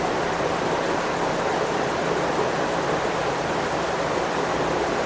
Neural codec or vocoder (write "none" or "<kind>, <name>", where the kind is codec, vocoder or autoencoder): none